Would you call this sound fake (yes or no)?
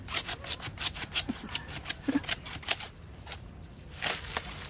no